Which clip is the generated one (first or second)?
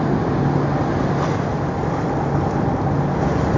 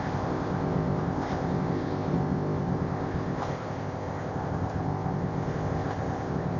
second